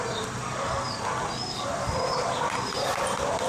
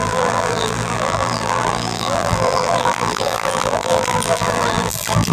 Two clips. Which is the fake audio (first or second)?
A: second